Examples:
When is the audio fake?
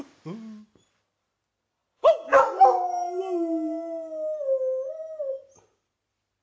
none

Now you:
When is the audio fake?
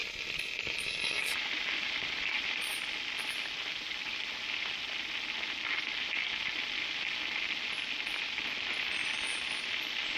0.0-2.9 (vocoder, BigVGAN v2)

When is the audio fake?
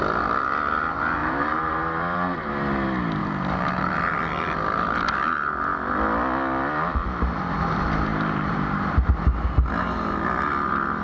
1.2-2.5 (vocoder, BigVGAN v2); 3.2-3.9; 8.1-9.7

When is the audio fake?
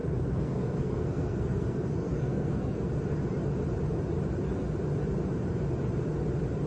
0.0-2.9 (codec, SNAC)